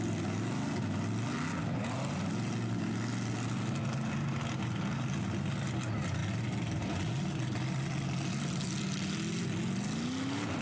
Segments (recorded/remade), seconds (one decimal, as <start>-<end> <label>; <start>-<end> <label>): 0.0-10.6 recorded